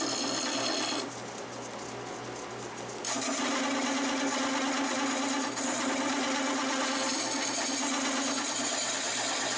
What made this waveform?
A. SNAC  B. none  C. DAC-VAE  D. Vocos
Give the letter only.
B